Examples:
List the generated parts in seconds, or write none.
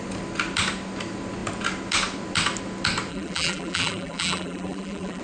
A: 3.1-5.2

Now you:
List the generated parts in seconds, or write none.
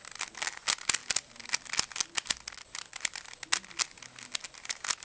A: none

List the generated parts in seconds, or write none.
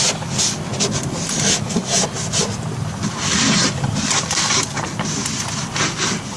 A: 0.0-0.7; 1.7-6.4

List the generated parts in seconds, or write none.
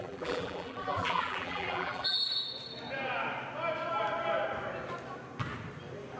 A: 0.0-2.2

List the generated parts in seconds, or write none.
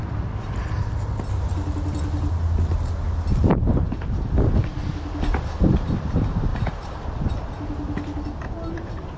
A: 3.4-4.8; 5.6-6.5; 8.4-9.2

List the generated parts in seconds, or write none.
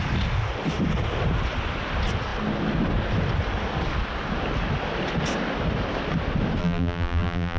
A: 6.6-7.6